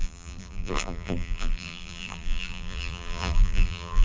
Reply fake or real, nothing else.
fake